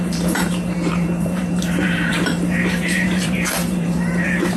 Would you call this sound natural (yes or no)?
no